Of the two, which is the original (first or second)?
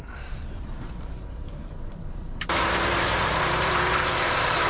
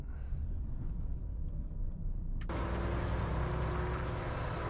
second